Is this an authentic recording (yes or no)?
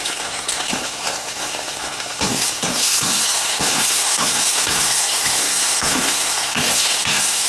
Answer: no